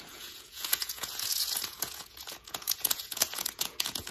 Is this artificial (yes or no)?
yes